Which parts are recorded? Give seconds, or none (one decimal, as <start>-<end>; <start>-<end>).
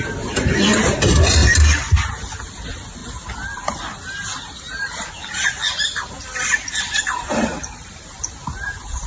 0.0-9.1